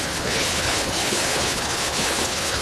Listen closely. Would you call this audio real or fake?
fake